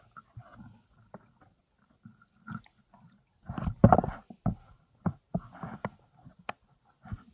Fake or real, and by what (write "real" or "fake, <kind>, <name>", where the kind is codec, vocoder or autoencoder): real